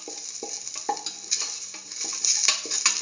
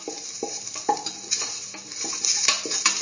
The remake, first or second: second